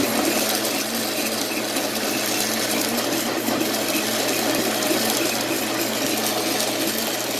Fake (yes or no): no